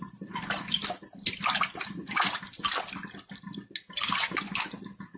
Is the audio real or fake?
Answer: real